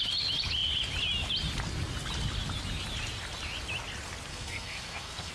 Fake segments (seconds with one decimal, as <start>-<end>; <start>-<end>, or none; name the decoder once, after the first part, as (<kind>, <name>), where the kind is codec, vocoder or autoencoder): 4.3-5.3 (codec, SNAC)